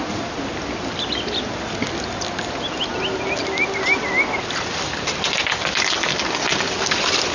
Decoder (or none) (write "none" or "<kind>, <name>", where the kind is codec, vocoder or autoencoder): none